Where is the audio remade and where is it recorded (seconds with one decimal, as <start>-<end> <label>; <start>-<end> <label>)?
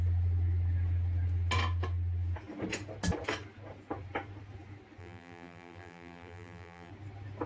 0.0-5.0 recorded; 5.0-6.9 remade; 6.9-7.5 recorded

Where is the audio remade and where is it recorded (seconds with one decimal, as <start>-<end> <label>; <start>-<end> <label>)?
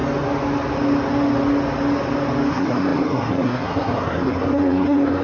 0.0-2.5 recorded; 2.5-5.2 remade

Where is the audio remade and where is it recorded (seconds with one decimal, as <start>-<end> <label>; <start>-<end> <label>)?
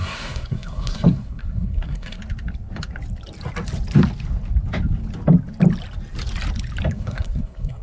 0.0-2.2 remade; 2.2-6.9 recorded; 6.9-7.8 remade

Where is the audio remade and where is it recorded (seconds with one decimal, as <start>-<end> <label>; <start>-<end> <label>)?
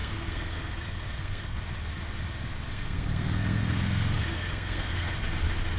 0.0-1.6 remade; 1.6-2.7 recorded; 2.7-5.1 remade; 5.1-5.8 recorded